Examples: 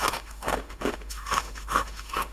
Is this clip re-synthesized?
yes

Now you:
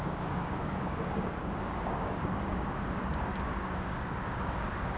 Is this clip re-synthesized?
yes